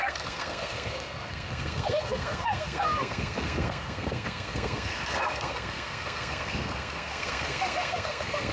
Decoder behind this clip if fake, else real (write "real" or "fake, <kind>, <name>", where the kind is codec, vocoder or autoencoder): fake, codec, SNAC